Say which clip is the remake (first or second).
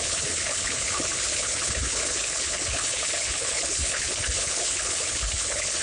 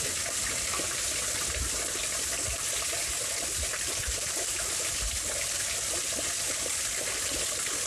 first